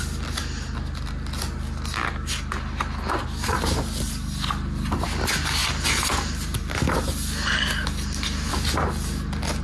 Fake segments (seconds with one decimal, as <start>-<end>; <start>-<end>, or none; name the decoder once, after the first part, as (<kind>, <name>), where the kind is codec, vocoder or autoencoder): none